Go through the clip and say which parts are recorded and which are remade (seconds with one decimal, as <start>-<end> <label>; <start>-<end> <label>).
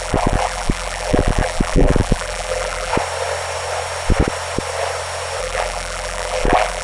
0.0-2.9 remade; 2.9-5.4 recorded; 5.4-6.8 remade